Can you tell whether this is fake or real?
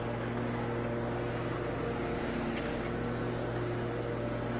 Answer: real